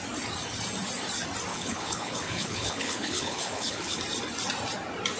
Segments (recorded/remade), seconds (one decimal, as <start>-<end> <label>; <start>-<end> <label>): 0.0-1.5 recorded; 1.5-4.0 remade; 4.0-5.2 recorded